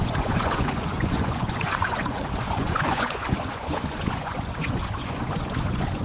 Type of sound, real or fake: fake